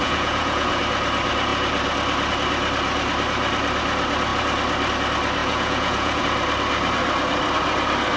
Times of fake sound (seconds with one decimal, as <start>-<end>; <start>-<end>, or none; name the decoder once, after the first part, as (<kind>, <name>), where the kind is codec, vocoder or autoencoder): 0.0-0.8 (vocoder, Vocos); 5.4-6.2